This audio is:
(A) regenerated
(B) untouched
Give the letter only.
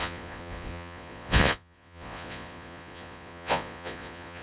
A